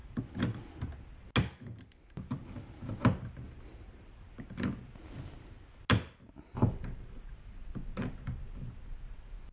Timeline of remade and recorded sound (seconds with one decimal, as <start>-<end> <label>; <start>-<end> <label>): 0.0-9.5 recorded